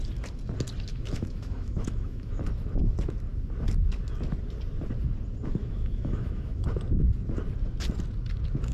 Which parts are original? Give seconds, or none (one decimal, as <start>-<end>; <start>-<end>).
0.0-0.9; 2.4-5.6; 6.7-8.7